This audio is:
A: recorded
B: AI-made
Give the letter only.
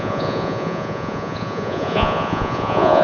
B